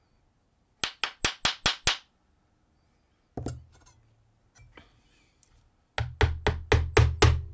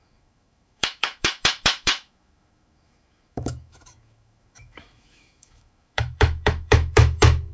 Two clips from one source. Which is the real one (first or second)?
first